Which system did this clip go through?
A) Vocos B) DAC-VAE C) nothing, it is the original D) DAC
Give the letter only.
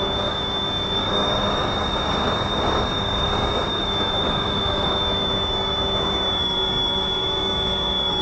D